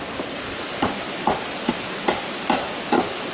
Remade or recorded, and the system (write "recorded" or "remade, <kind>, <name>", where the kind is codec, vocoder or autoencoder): recorded